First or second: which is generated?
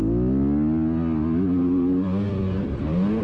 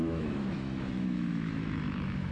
second